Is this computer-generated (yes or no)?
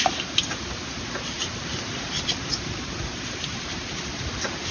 no